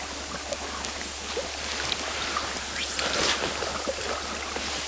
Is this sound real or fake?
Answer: real